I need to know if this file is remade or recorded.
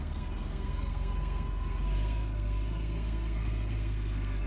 remade